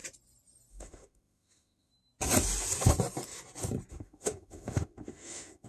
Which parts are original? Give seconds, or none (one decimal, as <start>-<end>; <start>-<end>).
0.0-0.7; 1.9-3.9